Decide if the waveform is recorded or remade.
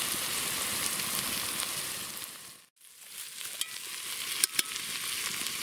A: recorded